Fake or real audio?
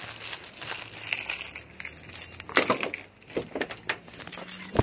real